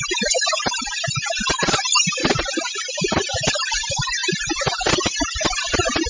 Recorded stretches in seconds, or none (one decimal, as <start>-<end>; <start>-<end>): 0.0-6.1